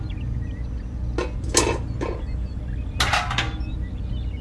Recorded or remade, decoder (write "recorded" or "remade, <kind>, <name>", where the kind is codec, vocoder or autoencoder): recorded